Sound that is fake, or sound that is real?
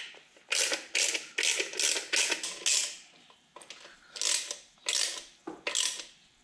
real